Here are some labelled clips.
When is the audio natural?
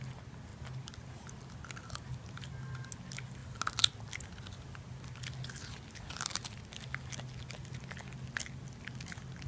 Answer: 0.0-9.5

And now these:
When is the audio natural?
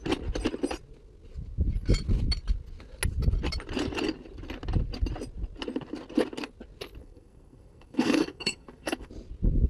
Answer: 0.0-7.0; 9.1-9.7